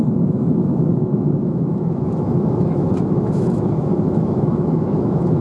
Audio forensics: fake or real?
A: fake